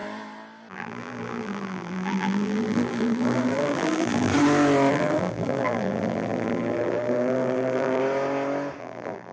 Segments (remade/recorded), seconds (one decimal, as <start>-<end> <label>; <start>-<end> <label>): 0.0-0.7 recorded; 0.7-4.3 remade; 4.3-4.9 recorded; 4.9-8.0 remade; 8.0-8.8 recorded; 8.8-9.3 remade